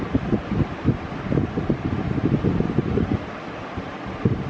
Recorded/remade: recorded